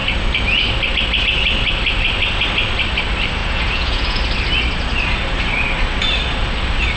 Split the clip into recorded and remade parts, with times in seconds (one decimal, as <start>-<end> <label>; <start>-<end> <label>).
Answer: 0.0-3.4 recorded; 3.4-4.2 remade; 4.2-7.0 recorded